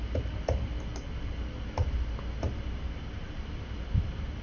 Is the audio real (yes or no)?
yes